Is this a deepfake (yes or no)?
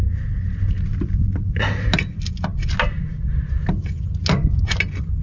no